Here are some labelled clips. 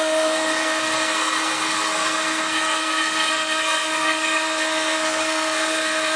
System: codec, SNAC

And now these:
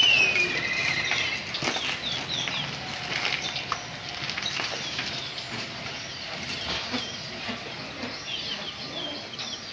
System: none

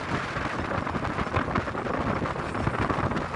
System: none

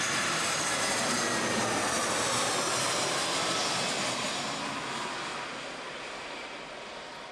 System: none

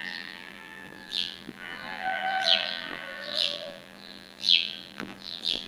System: vocoder, BigVGAN v2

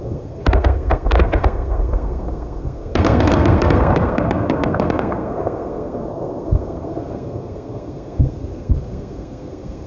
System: codec, SNAC